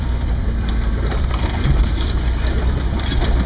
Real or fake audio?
fake